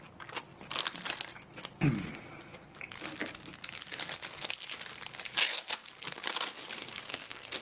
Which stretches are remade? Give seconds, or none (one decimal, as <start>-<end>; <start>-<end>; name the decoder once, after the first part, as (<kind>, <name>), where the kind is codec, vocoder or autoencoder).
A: 6.8-7.6 (codec, SNAC)